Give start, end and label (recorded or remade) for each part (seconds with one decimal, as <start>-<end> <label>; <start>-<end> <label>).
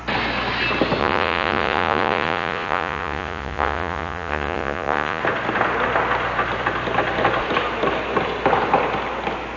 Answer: 0.0-1.0 recorded; 1.0-5.2 remade; 5.2-9.6 recorded